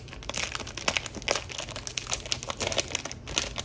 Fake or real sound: real